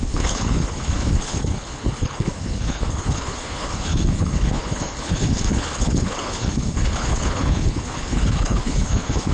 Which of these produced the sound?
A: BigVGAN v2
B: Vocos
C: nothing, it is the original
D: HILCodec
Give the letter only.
D